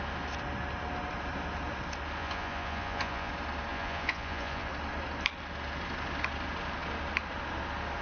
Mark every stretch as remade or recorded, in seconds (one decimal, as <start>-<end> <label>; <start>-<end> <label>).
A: 0.0-2.2 recorded; 2.2-3.3 remade; 3.3-3.7 recorded; 3.7-4.7 remade; 4.7-8.0 recorded